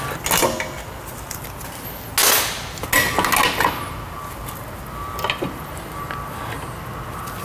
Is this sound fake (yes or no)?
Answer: no